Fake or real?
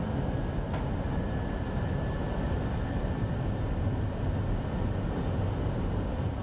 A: real